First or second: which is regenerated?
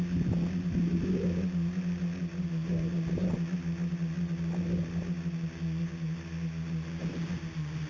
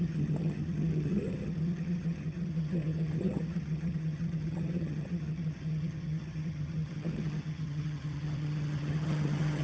second